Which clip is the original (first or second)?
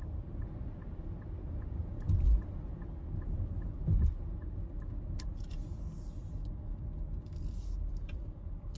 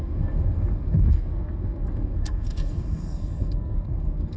first